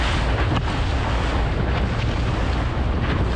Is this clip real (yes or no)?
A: yes